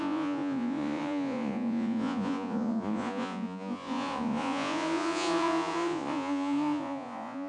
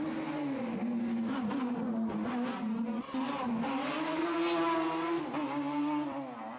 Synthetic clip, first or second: first